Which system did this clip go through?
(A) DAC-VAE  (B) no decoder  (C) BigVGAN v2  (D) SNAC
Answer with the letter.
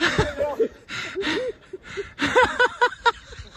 C